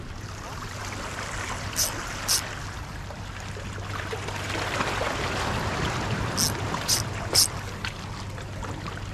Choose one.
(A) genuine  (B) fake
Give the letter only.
A